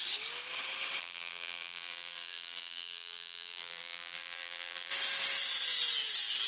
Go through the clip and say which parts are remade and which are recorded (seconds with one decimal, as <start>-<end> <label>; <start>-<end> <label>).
0.0-1.0 recorded; 1.0-4.9 remade; 4.9-6.5 recorded